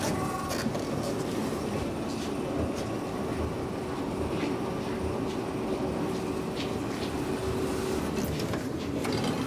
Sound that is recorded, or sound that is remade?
recorded